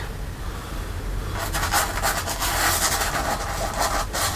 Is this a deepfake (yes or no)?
no